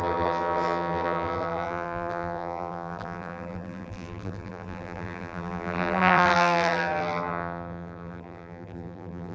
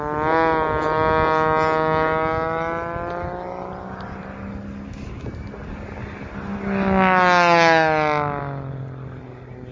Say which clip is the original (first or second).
second